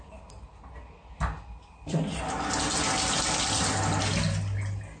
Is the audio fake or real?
real